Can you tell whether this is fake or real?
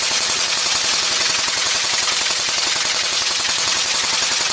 fake